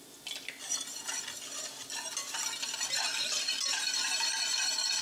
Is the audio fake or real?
real